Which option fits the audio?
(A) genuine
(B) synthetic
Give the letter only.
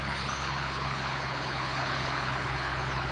B